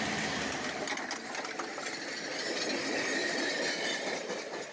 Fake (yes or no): no